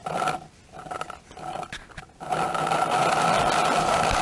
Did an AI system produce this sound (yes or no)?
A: no